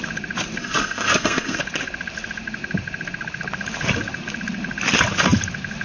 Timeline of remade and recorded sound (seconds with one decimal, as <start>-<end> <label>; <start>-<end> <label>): 0.0-0.6 recorded; 0.6-1.6 remade; 1.6-5.8 recorded